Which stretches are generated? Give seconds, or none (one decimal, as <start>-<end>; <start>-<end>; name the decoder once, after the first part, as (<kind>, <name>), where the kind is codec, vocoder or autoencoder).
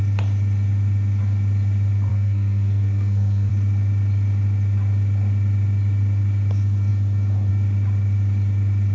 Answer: 2.1-3.5 (codec, SNAC)